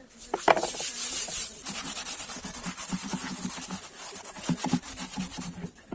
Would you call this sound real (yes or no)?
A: yes